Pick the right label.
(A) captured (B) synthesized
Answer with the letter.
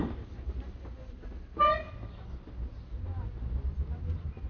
A